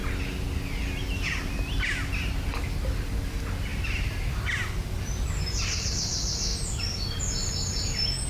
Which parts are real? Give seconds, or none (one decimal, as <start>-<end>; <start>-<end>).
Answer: 0.0-3.7; 5.9-6.5; 7.2-8.3